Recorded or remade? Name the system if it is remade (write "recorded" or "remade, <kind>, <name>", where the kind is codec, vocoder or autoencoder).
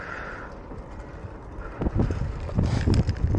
recorded